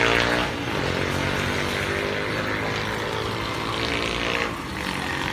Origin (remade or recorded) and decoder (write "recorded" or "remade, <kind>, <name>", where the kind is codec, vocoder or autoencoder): recorded